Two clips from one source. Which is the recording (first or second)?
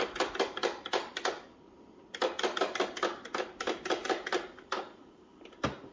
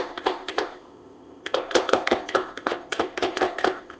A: first